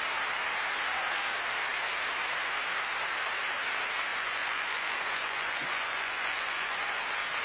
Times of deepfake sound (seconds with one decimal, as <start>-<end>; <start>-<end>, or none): 4.1-7.0